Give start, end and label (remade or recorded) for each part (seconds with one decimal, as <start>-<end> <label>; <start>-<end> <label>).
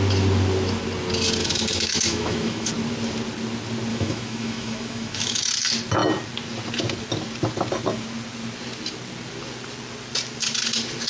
0.0-1.4 recorded; 1.4-2.7 remade; 2.7-3.9 recorded; 3.9-5.4 remade; 5.4-11.1 recorded